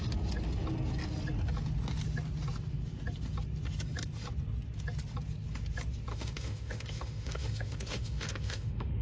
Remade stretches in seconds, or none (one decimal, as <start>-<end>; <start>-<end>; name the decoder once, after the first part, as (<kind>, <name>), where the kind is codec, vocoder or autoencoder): 6.1-9.0 (autoencoder, DAC-VAE)